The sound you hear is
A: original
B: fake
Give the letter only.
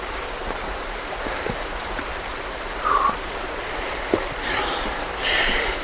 B